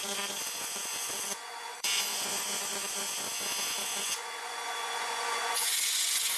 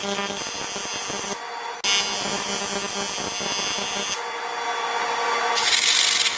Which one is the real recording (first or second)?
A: second